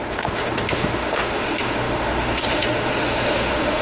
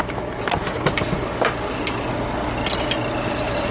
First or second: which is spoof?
first